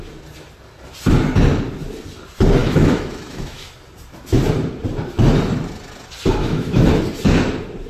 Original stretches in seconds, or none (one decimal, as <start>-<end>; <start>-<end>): 0.0-2.6; 3.7-6.4; 6.9-7.9